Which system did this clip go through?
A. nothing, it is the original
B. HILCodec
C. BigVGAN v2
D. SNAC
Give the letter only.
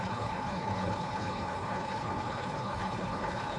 B